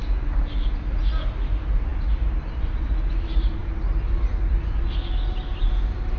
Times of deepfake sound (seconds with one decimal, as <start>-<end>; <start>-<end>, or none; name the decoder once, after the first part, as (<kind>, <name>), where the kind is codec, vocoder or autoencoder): none